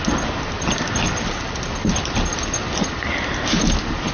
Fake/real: real